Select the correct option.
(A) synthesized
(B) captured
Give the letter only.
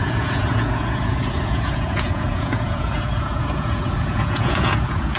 A